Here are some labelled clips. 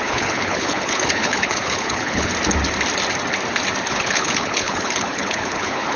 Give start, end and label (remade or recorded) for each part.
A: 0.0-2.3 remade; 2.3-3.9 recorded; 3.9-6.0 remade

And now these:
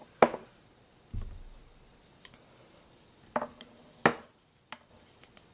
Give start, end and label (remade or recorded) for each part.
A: 0.0-5.5 recorded

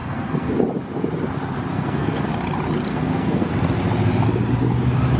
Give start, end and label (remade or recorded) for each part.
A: 0.0-0.5 remade; 0.5-1.7 recorded; 1.7-2.3 remade; 2.3-2.9 recorded; 2.9-3.5 remade; 3.5-5.2 recorded

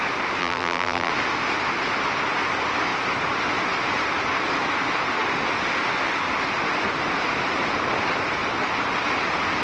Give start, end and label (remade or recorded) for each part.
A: 0.0-0.4 recorded; 0.4-1.1 remade; 1.1-9.6 recorded

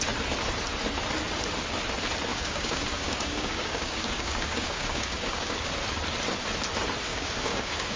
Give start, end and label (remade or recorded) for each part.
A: 0.0-2.3 recorded; 2.3-5.7 remade; 5.7-7.1 recorded; 7.1-8.0 remade